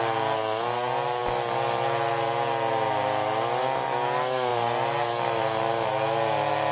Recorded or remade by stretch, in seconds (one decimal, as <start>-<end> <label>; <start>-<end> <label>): 0.0-6.7 recorded